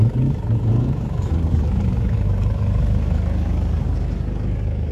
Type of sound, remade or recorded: remade